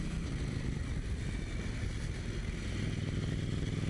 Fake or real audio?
real